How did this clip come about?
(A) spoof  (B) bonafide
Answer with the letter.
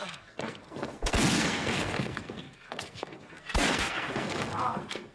A